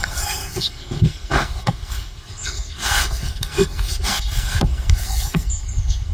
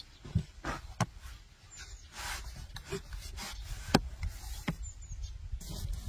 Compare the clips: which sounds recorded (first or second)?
second